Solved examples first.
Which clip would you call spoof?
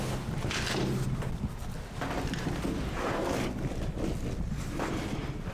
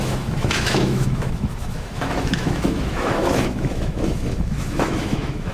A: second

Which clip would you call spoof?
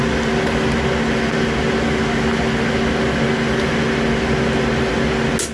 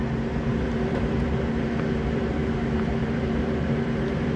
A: second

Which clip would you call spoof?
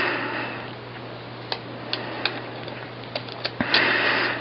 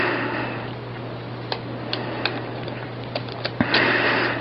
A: second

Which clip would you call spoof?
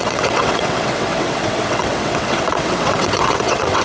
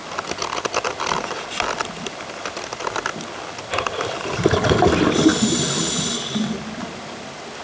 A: first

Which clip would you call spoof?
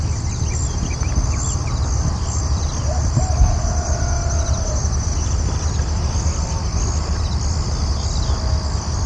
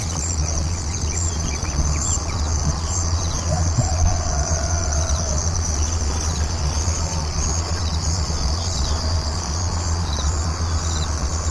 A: second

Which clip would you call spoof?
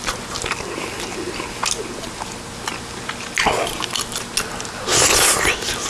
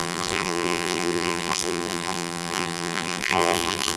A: second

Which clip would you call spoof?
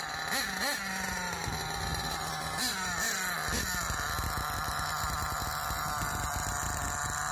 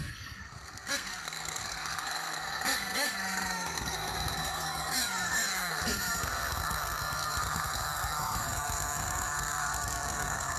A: second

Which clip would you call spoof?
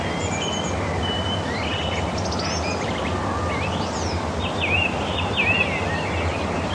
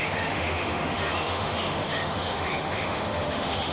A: second